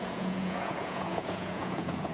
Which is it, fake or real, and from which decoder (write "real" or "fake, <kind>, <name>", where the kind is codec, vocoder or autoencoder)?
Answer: fake, vocoder, Vocos